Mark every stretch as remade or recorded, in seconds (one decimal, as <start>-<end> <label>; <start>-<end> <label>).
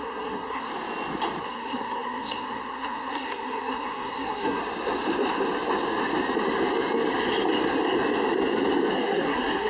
0.0-0.7 remade; 0.7-1.4 recorded; 1.4-4.6 remade; 4.6-8.9 recorded; 8.9-9.7 remade